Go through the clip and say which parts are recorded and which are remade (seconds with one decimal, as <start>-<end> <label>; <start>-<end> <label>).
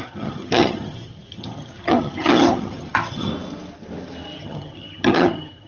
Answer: 0.0-3.3 remade; 3.3-4.4 recorded; 4.4-5.7 remade